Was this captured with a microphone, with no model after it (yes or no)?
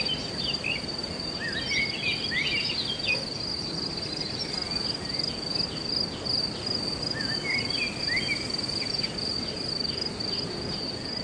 yes